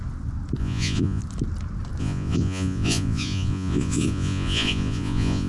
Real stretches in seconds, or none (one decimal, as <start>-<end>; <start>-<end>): 0.0-0.6; 1.2-2.0